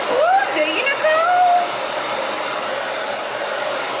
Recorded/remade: recorded